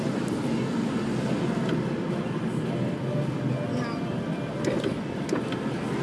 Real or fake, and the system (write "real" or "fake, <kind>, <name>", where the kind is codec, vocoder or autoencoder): real